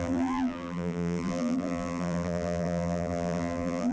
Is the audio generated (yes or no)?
yes